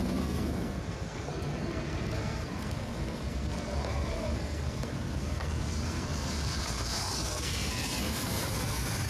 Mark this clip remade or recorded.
remade